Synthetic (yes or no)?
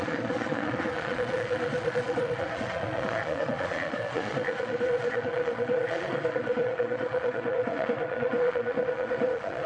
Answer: yes